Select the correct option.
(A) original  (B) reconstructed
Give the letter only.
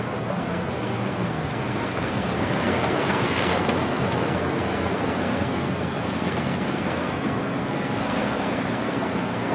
B